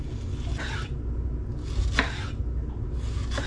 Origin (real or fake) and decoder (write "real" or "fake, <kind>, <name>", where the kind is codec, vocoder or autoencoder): real